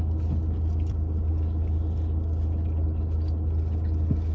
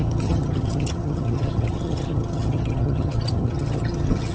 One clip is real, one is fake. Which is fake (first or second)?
second